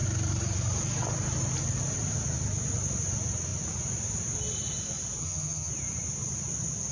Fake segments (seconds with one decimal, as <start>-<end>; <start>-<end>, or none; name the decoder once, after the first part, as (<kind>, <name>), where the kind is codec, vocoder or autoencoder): 5.2-5.7 (vocoder, HiFi-GAN)